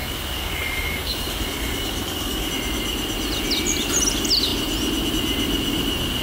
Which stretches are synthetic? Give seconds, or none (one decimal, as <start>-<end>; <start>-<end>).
0.0-2.5